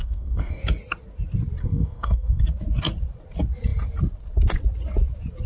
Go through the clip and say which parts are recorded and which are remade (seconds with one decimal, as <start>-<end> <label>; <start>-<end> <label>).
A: 0.0-0.6 remade; 0.6-1.6 recorded; 1.6-2.4 remade; 2.4-5.5 recorded